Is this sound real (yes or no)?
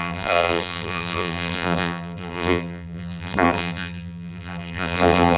no